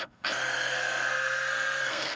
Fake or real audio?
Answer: fake